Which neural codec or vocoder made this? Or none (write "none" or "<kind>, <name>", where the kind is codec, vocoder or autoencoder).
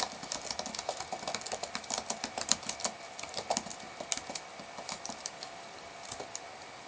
none